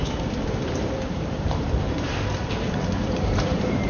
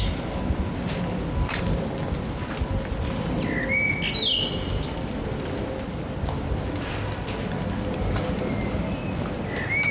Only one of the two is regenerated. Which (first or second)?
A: first